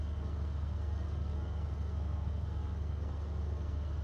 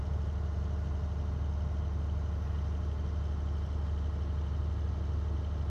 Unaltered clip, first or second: second